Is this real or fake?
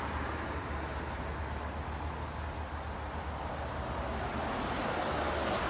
real